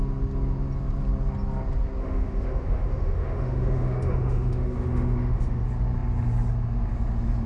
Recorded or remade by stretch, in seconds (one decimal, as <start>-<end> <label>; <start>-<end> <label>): 0.0-2.0 recorded; 2.0-5.6 remade; 5.6-7.5 recorded